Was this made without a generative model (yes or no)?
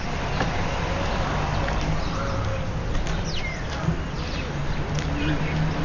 yes